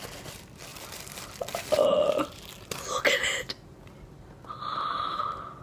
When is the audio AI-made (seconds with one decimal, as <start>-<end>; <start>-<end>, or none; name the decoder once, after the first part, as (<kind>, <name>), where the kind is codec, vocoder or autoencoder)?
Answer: 0.7-2.4 (vocoder, BigVGAN v2)